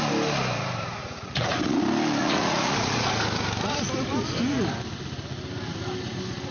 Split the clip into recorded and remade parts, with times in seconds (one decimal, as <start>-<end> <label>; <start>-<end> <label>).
0.0-1.0 recorded; 1.0-1.8 remade; 1.8-2.2 recorded; 2.2-3.1 remade; 3.1-6.5 recorded